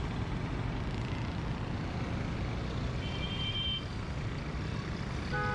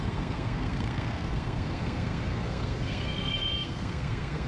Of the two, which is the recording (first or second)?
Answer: first